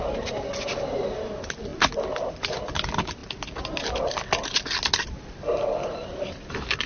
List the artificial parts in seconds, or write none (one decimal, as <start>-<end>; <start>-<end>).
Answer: none